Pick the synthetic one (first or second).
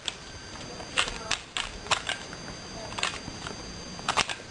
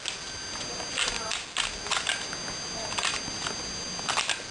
first